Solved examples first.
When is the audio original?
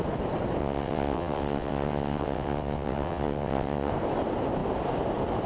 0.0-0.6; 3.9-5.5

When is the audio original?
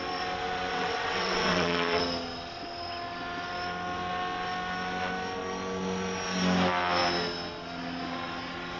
0.0-0.7; 2.0-8.8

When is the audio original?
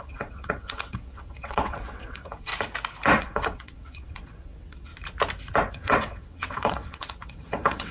2.5-3.2; 4.9-5.7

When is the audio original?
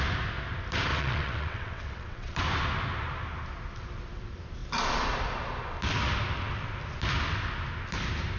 0.0-0.9; 2.4-8.4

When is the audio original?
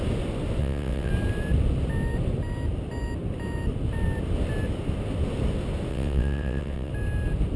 0.0-0.6; 1.1-5.9; 6.9-7.6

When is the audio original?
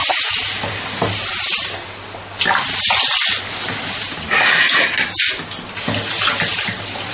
0.0-7.1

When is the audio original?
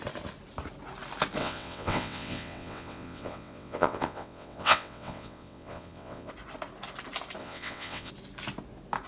0.0-1.4; 6.3-7.4; 8.1-9.1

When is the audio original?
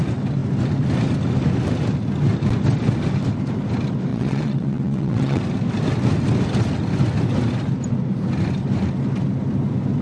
0.0-4.1; 5.4-10.0